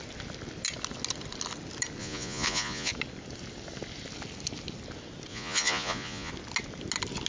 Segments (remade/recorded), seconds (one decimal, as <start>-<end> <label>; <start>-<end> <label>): 0.0-2.0 recorded; 2.0-2.9 remade; 2.9-5.3 recorded; 5.3-6.3 remade; 6.3-7.3 recorded